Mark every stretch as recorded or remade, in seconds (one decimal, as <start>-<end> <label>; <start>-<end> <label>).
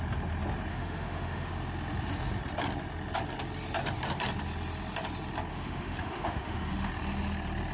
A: 0.0-0.7 recorded; 0.7-1.5 remade; 1.5-5.5 recorded; 5.5-6.9 remade; 6.9-7.7 recorded